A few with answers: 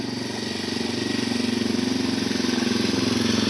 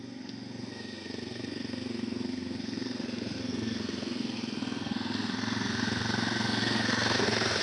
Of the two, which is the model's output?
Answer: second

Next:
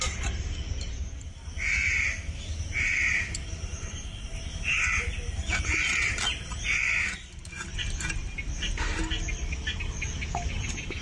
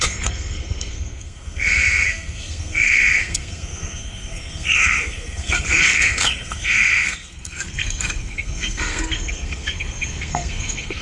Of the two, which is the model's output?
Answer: second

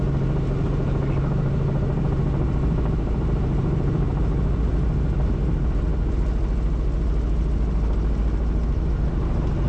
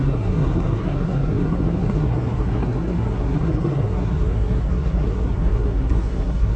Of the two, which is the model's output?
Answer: second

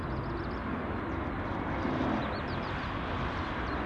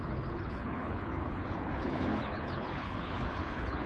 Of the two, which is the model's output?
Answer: second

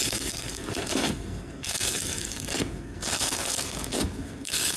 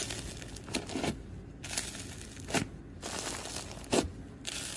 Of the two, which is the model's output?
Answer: first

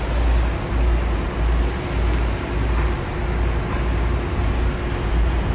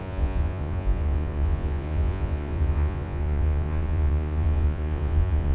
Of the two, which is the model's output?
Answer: second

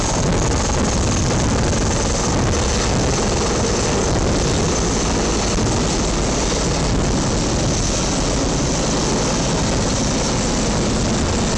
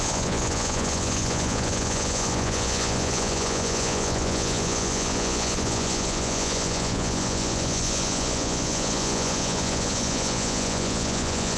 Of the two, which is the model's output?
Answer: second